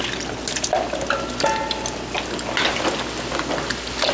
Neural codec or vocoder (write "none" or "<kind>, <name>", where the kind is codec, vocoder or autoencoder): none